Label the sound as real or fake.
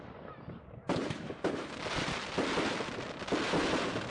real